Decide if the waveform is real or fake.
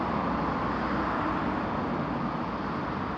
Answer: real